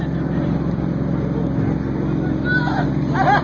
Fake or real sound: real